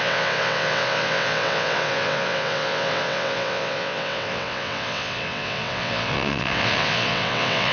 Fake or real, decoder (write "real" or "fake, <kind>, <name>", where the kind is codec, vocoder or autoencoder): fake, vocoder, WaveNeXt